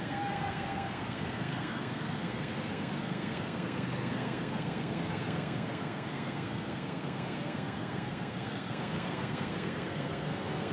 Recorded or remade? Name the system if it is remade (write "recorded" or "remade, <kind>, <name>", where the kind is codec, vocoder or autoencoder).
remade, codec, SNAC